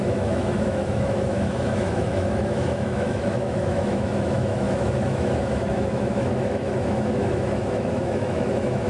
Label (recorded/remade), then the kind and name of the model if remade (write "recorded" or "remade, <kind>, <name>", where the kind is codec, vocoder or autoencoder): remade, autoencoder, DAC-VAE